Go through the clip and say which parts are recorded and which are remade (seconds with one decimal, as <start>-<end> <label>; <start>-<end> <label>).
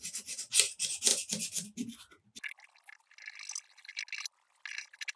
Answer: 0.0-5.2 recorded